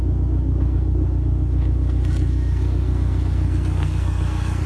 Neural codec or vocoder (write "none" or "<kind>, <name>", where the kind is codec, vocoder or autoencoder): codec, SNAC